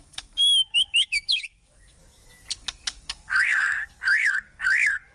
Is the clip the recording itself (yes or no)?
no